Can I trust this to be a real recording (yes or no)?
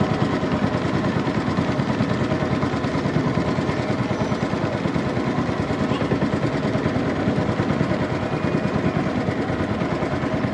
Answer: yes